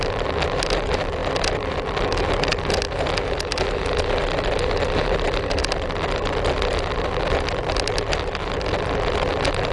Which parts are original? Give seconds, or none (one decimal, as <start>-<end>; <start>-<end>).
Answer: 0.0-9.7